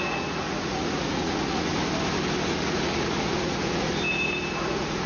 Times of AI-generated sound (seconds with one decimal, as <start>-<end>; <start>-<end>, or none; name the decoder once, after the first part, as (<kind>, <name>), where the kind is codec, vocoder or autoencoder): 0.0-1.7 (vocoder, Vocos); 2.5-3.9; 4.6-5.1